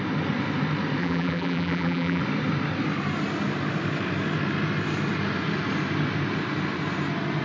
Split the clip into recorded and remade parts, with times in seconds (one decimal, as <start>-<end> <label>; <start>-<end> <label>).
0.0-1.0 recorded; 1.0-2.2 remade; 2.2-7.4 recorded